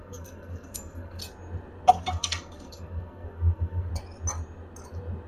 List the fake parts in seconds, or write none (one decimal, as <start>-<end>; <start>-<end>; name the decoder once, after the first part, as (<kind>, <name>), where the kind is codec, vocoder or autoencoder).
0.0-1.2 (codec, SNAC); 1.9-3.9